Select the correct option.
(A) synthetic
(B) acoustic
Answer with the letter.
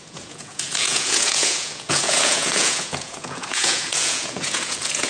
A